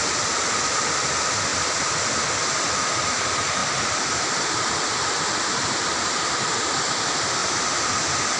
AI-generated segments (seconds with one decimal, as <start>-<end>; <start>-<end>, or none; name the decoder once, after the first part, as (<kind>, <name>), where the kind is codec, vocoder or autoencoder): 3.6-6.6 (vocoder, BigVGAN v2); 7.4-7.9